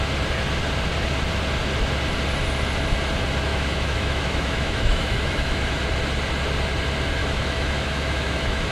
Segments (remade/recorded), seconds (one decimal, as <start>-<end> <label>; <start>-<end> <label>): 0.0-3.5 recorded; 3.5-5.8 remade; 5.8-7.2 recorded; 7.2-8.7 remade